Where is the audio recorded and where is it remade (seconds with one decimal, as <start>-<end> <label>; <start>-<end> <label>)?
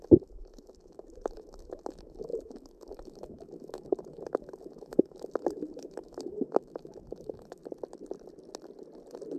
0.0-7.6 remade; 7.6-9.4 recorded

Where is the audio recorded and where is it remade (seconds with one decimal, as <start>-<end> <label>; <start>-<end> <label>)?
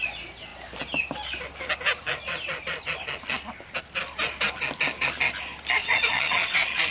0.0-5.8 recorded; 5.8-6.9 remade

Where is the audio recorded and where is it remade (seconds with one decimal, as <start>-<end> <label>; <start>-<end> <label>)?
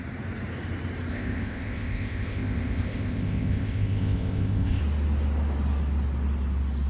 0.0-1.1 recorded; 1.1-4.8 remade; 4.8-6.9 recorded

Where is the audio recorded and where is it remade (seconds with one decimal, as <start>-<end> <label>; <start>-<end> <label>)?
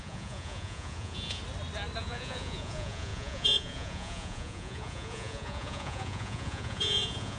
0.0-1.4 remade; 1.4-2.0 recorded; 2.0-7.4 remade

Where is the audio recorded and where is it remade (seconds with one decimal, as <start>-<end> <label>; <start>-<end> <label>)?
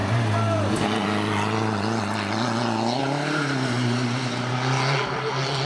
0.0-3.0 recorded; 3.0-4.5 remade; 4.5-5.7 recorded